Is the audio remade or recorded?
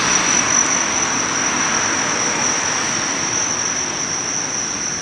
recorded